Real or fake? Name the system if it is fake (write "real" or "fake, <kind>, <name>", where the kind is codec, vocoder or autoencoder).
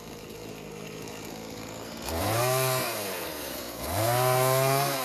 fake, codec, SNAC